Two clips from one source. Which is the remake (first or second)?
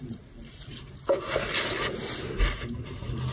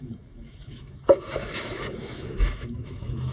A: second